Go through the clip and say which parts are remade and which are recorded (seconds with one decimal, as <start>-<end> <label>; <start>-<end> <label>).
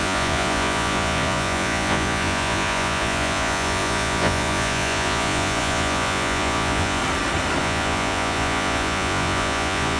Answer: 0.0-7.0 remade; 7.0-7.6 recorded; 7.6-10.0 remade